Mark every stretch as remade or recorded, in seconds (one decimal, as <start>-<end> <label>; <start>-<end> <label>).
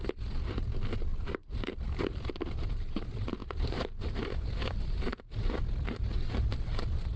0.0-1.1 recorded; 1.1-2.3 remade; 2.3-3.4 recorded; 3.4-5.6 remade; 5.6-7.2 recorded